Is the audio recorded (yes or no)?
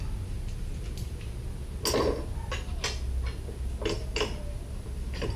yes